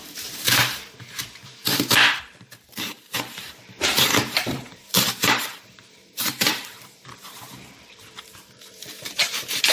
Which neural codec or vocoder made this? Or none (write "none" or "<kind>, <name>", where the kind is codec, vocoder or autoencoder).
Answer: vocoder, BigVGAN v2